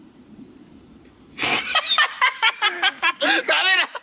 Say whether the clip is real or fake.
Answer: fake